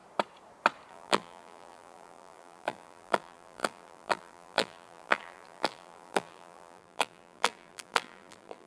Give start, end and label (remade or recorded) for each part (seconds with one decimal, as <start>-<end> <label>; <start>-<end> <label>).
0.0-0.9 recorded; 0.9-8.7 remade